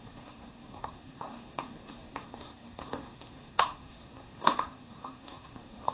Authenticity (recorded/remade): remade